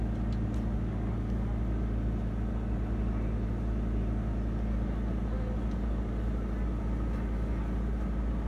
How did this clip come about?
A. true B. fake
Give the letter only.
A